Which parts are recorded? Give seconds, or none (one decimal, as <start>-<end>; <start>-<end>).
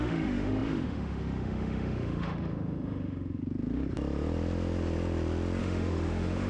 3.4-5.6